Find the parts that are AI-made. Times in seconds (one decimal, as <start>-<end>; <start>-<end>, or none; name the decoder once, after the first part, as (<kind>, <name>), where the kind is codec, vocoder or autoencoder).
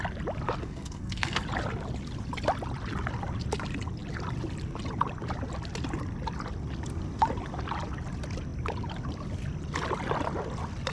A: 0.6-1.4 (codec, SNAC)